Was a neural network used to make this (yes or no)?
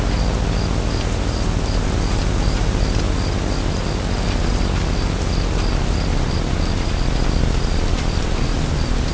no